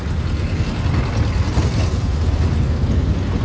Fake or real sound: real